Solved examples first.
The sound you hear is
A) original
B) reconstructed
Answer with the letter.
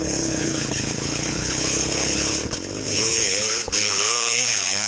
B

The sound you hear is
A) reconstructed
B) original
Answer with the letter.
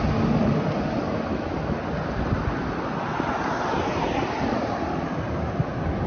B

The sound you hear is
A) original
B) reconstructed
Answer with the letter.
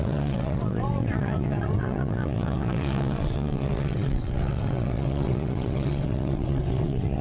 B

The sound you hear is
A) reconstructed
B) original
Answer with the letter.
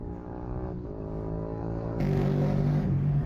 A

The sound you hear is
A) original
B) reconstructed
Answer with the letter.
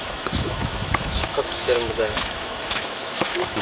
B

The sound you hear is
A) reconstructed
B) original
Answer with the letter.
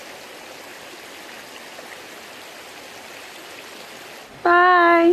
B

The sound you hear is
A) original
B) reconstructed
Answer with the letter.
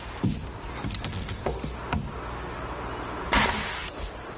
A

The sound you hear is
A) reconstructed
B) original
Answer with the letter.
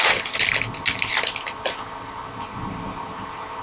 B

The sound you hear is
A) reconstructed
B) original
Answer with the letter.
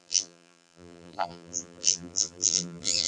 A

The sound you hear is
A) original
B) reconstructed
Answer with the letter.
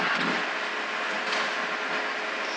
A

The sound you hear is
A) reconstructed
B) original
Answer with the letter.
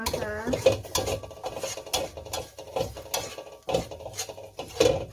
B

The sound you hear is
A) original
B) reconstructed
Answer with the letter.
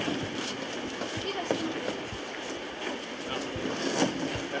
A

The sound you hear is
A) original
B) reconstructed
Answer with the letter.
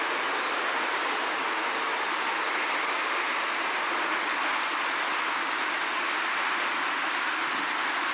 A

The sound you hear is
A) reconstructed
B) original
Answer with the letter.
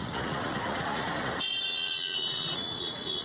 A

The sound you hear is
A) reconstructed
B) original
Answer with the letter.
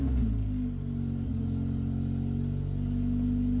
B